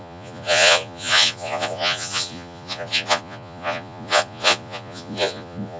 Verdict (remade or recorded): remade